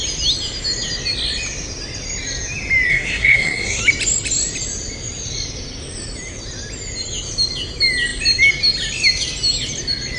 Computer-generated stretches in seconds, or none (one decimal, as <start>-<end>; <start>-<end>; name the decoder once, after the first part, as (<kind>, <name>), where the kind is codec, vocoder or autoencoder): 2.9-3.8 (codec, SNAC)